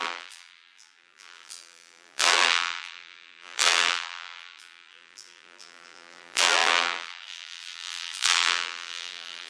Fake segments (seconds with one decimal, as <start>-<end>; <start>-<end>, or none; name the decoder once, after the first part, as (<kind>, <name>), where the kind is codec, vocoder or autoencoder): 0.0-9.5 (vocoder, BigVGAN v2)